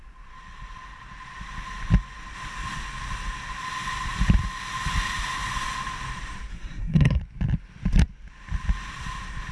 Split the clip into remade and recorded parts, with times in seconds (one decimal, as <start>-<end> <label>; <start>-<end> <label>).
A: 0.0-6.5 recorded; 6.5-7.2 remade; 7.2-9.5 recorded

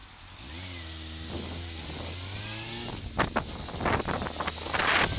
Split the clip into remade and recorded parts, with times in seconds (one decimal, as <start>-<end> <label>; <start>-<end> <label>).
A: 0.0-5.2 recorded

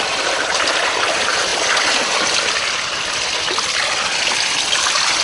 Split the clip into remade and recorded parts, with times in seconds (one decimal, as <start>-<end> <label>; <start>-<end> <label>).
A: 0.0-5.2 recorded

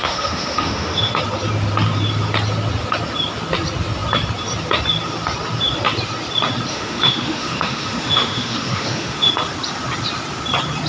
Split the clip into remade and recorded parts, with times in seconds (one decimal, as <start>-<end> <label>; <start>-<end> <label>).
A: 0.0-1.1 remade; 1.1-6.7 recorded; 6.7-9.3 remade; 9.3-10.9 recorded

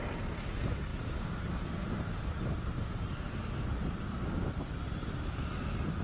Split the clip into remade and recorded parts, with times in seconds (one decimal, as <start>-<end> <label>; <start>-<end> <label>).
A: 0.0-6.0 recorded

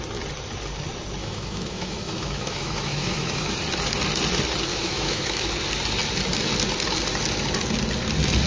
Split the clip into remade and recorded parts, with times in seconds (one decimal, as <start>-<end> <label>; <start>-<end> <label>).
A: 0.0-1.2 recorded; 1.2-3.5 remade; 3.5-4.7 recorded; 4.7-5.5 remade; 5.5-8.5 recorded